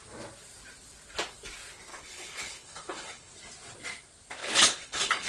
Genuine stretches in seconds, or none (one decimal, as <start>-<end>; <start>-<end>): 0.0-1.9; 3.3-4.4